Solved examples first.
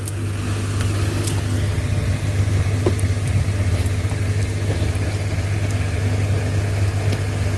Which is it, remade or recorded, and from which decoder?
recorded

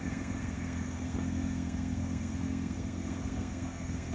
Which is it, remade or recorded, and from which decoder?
remade, codec, SNAC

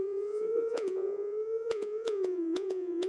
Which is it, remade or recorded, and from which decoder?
remade, vocoder, Vocos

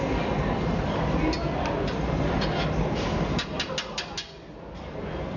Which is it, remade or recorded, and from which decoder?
recorded